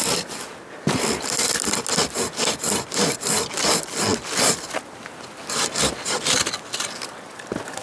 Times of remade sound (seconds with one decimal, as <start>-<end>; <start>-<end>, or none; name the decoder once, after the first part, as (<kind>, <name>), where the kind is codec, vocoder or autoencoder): none